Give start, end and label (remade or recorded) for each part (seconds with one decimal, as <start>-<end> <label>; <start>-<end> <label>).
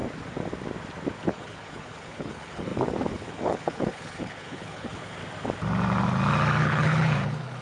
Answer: 0.0-1.3 recorded; 1.3-5.2 remade; 5.2-6.6 recorded; 6.6-7.6 remade